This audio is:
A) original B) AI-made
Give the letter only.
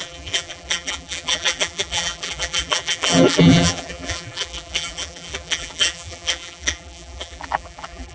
B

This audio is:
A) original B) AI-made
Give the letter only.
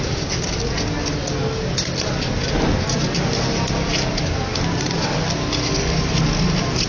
A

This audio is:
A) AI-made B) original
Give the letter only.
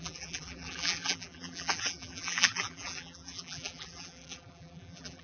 A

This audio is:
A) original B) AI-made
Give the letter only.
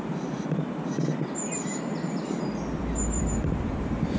B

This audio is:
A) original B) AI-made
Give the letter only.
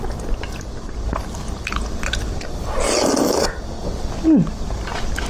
A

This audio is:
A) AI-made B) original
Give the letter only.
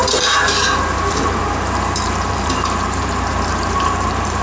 A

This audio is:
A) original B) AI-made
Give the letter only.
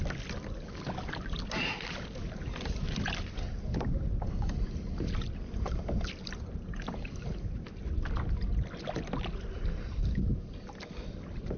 A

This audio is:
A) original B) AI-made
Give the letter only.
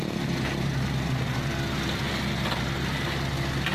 A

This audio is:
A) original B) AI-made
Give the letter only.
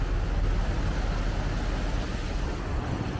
A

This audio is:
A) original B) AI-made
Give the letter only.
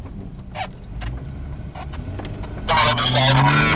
A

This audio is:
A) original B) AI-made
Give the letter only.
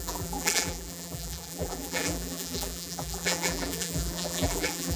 B